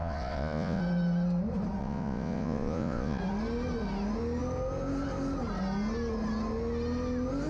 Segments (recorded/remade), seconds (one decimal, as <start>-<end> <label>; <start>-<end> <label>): 0.0-0.8 remade; 0.8-1.8 recorded; 1.8-3.2 remade; 3.2-7.5 recorded